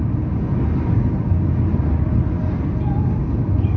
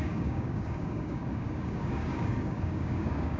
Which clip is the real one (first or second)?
first